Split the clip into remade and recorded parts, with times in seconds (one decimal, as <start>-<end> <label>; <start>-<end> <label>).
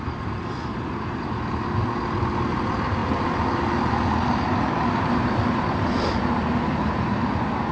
0.0-0.7 recorded; 0.7-1.5 remade; 1.5-3.0 recorded; 3.0-5.7 remade; 5.7-7.7 recorded